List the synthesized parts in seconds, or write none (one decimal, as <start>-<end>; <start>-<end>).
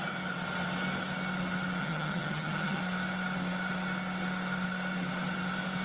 1.8-2.8